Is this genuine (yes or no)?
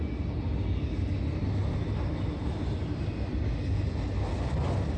yes